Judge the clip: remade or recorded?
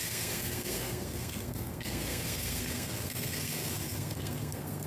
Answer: remade